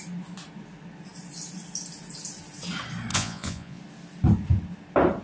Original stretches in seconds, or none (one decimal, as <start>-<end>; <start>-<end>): 0.0-3.1; 3.8-5.2